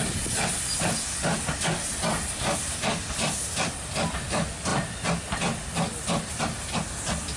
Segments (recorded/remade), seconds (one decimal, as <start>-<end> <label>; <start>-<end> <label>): 0.0-7.4 recorded